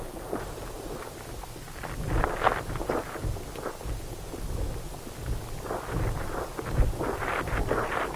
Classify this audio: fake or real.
real